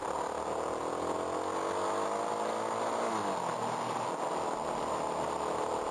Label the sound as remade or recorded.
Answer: recorded